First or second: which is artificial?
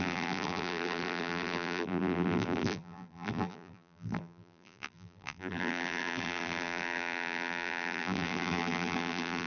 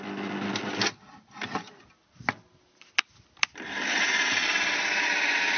first